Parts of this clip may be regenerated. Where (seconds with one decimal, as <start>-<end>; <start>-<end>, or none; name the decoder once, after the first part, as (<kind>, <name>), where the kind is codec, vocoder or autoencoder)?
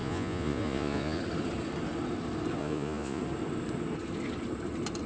0.0-1.2 (vocoder, Vocos); 2.6-3.2